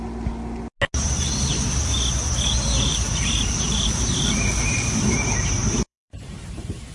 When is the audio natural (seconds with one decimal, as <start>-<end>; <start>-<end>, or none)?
0.0-2.9